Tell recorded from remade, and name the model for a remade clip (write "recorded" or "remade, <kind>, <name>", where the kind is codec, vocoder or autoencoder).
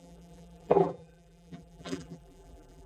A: remade, vocoder, BigVGAN v2